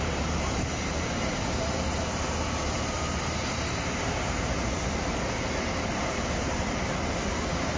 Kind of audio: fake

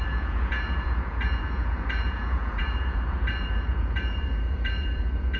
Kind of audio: fake